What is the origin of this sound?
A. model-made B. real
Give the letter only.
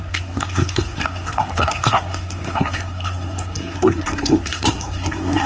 A